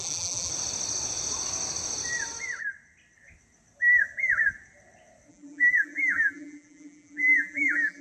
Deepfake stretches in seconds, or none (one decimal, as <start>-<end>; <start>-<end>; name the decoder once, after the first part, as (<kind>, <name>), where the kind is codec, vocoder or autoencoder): 0.0-0.5 (vocoder, BigVGAN v2); 5.3-8.0